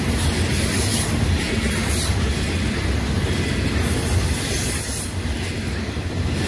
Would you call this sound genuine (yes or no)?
yes